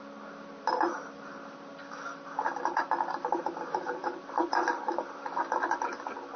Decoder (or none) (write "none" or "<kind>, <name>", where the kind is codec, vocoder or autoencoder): vocoder, BigVGAN v2